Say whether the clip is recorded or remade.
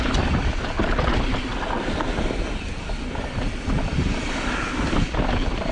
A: recorded